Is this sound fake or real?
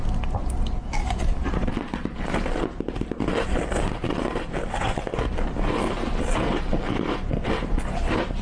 real